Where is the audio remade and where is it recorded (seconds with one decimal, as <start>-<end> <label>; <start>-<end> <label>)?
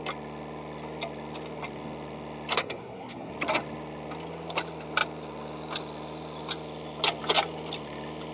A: 0.0-2.6 recorded; 2.6-3.3 remade; 3.3-8.3 recorded